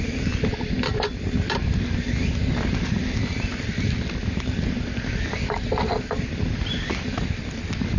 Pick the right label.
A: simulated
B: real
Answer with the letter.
B